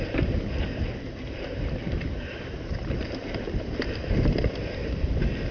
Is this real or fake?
fake